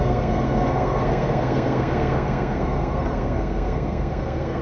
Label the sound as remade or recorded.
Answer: remade